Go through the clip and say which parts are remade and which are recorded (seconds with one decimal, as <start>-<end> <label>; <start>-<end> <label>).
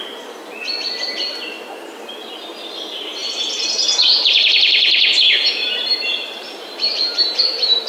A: 0.0-3.2 recorded; 3.2-7.9 remade